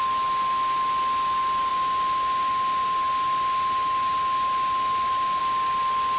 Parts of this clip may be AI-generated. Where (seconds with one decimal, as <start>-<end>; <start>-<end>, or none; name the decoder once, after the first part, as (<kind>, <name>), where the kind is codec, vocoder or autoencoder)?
none